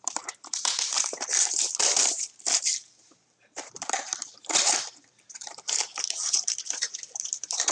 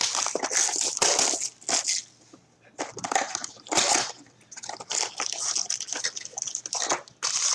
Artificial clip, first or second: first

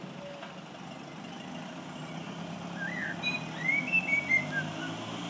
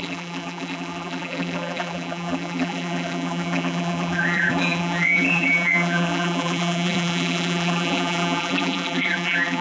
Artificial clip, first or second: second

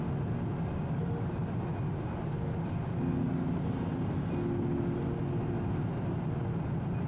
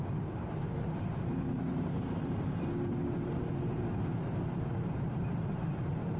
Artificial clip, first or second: second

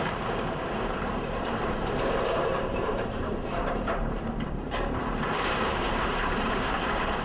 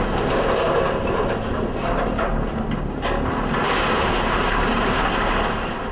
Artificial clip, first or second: first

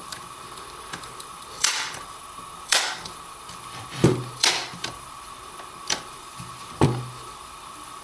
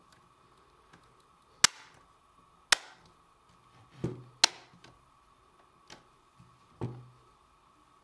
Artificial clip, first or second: first